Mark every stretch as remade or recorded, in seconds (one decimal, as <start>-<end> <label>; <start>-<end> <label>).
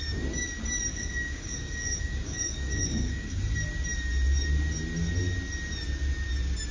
0.0-0.9 recorded; 0.9-3.4 remade; 3.4-6.7 recorded